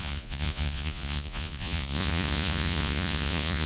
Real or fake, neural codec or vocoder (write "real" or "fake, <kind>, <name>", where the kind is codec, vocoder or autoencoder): fake, vocoder, Vocos